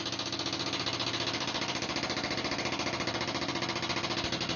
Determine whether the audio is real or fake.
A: real